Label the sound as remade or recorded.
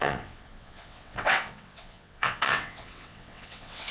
remade